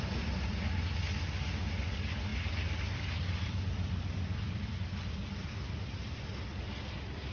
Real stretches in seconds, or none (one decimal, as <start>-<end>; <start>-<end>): 0.0-2.3; 6.2-7.3